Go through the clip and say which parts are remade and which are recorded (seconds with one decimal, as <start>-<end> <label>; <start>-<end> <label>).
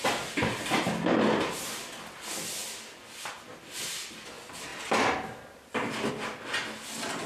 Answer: 0.0-7.3 recorded